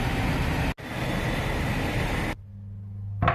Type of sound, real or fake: real